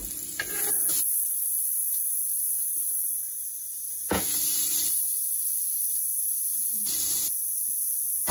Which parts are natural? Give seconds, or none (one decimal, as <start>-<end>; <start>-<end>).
0.0-3.9; 4.4-8.3